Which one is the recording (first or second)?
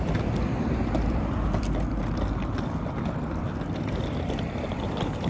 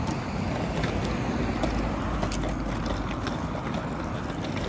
second